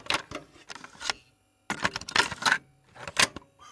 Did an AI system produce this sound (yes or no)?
no